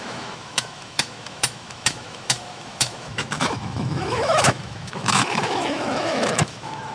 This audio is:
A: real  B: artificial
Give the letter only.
B